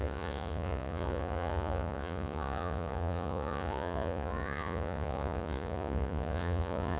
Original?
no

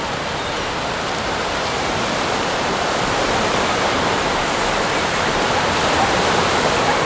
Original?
yes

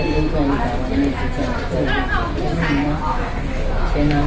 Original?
yes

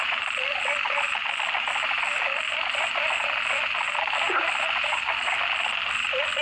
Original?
yes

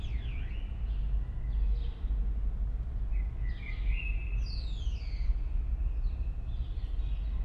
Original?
yes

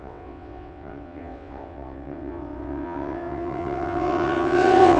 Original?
no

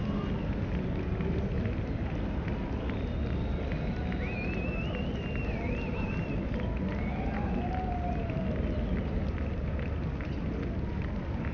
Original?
yes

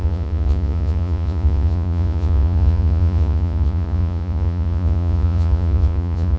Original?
no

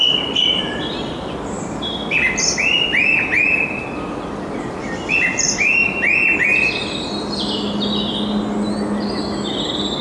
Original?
yes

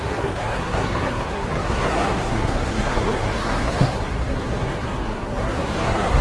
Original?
no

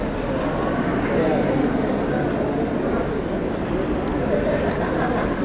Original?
yes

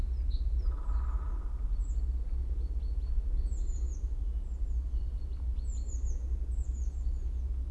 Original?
yes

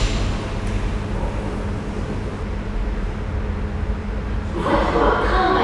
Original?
yes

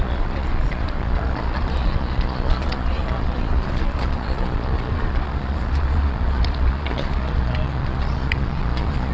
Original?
no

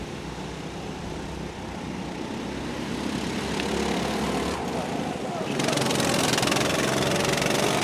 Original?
yes